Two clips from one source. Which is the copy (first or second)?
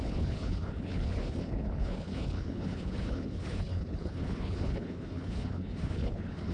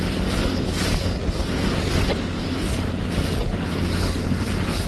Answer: first